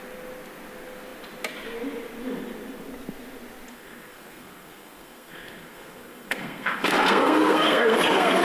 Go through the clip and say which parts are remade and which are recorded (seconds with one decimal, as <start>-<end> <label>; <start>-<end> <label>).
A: 0.0-3.7 recorded; 3.7-8.4 remade